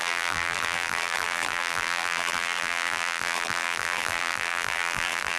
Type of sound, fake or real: fake